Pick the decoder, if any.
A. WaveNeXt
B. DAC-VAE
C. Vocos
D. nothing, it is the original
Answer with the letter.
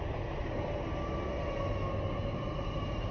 D